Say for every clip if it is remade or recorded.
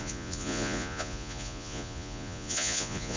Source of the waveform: remade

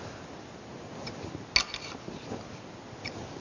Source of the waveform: recorded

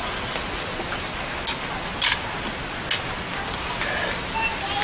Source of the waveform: recorded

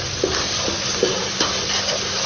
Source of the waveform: recorded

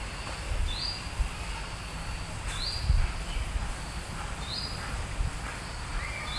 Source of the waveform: recorded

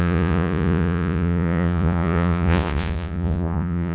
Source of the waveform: remade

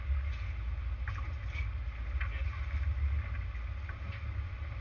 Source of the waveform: recorded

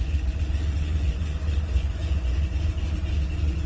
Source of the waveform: remade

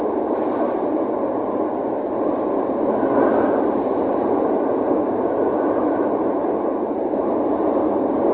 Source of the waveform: recorded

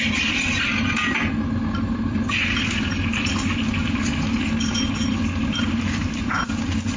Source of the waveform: recorded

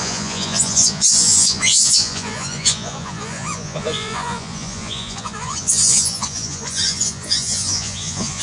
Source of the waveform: remade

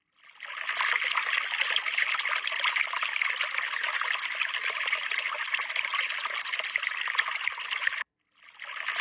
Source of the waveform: recorded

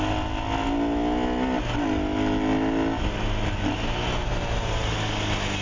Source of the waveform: recorded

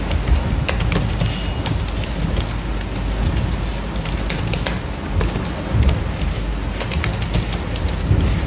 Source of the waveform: recorded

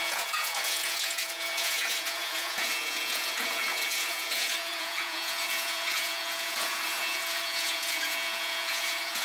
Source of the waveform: remade